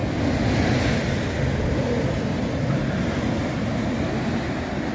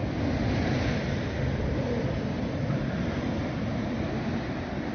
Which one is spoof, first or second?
second